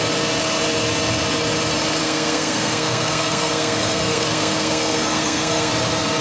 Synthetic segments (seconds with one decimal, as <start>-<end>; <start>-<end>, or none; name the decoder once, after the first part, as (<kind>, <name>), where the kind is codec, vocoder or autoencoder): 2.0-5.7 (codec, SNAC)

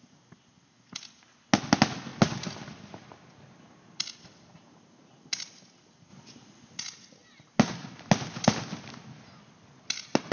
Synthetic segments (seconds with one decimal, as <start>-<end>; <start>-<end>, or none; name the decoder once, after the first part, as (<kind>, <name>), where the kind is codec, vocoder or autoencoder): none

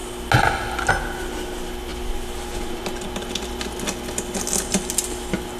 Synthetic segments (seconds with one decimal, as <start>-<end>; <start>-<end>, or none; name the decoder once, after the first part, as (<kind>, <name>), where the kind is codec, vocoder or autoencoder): none